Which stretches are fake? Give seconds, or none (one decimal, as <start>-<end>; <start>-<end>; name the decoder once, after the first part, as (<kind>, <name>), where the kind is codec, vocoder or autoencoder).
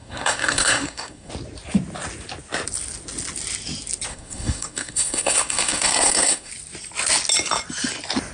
0.0-1.3 (codec, SNAC); 4.1-6.5